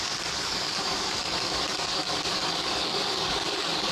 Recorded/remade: remade